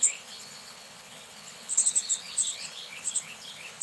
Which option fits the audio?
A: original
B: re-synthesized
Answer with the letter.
B